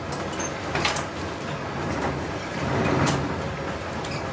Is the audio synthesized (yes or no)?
no